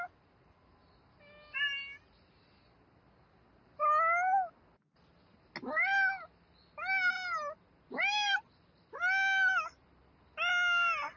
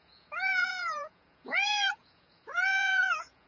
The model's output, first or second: second